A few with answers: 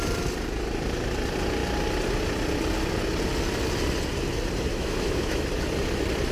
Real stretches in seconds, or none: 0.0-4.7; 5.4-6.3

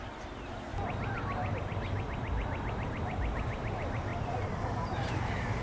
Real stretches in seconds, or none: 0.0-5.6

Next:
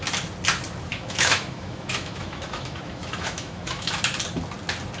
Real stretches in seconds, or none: 0.0-0.9; 3.9-5.0

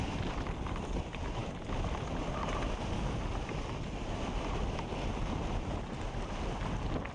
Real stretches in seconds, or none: 0.0-7.1

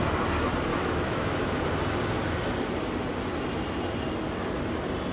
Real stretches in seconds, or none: 0.0-0.7; 1.6-5.1

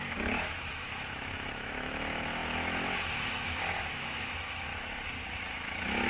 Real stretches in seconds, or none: 4.7-5.3

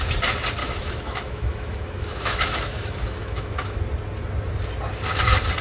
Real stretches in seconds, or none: 0.0-0.6; 3.8-5.6